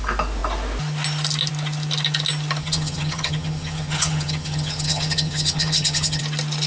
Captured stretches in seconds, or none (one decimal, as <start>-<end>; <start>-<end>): 0.0-2.6; 6.2-6.7